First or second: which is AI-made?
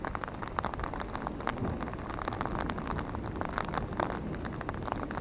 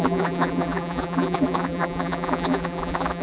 second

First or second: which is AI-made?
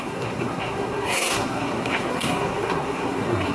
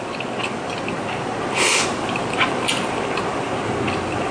first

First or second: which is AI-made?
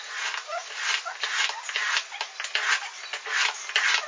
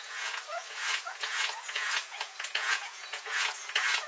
second